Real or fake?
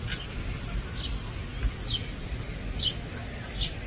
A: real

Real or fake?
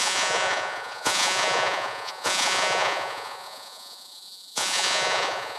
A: fake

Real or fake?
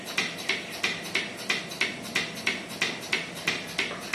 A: real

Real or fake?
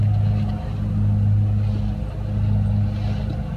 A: real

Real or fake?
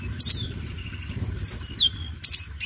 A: fake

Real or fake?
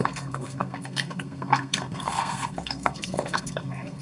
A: fake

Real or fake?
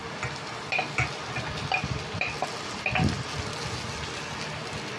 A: real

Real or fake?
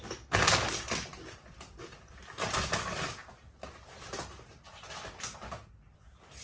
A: real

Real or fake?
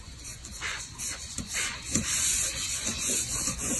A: fake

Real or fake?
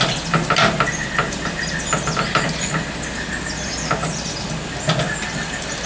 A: real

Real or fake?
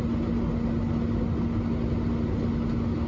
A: real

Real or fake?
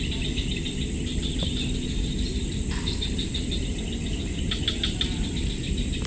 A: real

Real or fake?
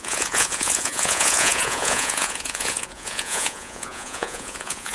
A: fake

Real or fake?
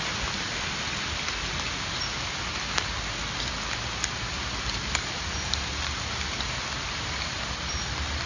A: real